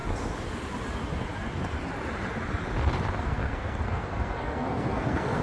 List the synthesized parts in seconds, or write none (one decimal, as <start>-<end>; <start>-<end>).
3.2-5.4